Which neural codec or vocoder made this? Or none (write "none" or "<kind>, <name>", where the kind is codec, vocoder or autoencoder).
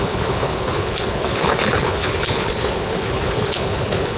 codec, HILCodec